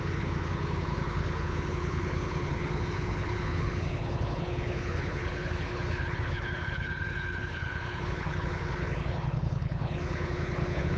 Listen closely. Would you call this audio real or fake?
fake